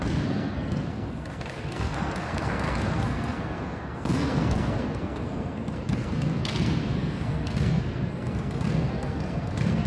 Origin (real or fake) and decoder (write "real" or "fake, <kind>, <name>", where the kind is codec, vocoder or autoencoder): fake, codec, SNAC